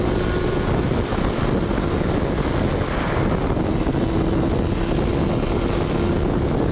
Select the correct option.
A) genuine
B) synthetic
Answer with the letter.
A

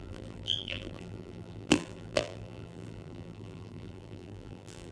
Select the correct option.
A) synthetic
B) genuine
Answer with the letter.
A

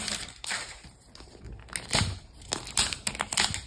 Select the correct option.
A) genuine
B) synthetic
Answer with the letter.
A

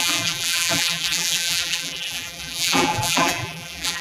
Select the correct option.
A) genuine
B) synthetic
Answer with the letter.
B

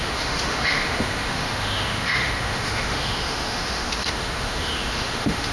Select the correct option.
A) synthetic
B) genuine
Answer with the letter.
A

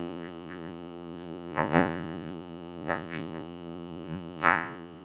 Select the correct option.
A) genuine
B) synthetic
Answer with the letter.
B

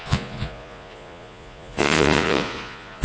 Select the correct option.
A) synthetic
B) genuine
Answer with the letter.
A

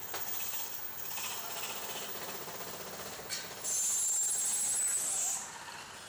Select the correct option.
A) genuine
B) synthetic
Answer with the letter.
A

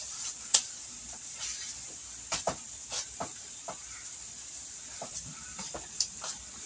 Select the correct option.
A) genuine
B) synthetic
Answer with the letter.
B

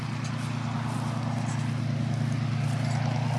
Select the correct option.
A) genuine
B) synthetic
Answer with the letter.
A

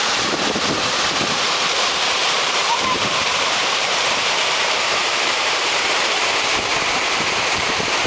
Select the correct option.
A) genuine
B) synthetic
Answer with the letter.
B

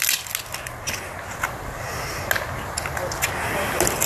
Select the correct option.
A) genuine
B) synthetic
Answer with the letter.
A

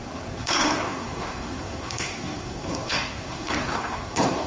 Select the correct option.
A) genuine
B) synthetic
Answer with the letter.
B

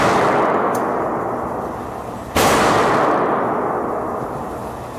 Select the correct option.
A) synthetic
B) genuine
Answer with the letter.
B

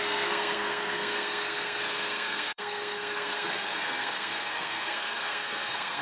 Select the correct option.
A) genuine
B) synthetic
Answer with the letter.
B